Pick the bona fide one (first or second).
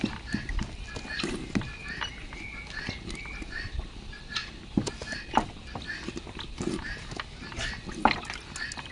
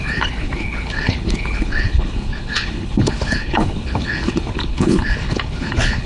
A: first